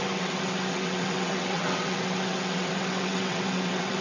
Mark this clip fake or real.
fake